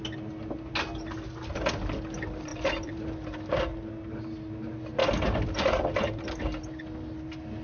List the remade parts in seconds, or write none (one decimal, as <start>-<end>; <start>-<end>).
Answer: 2.5-3.6; 5.0-6.4